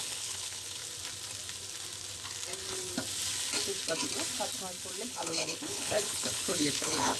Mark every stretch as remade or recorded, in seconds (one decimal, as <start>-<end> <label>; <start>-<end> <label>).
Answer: 0.0-0.8 remade; 0.8-5.1 recorded; 5.1-7.2 remade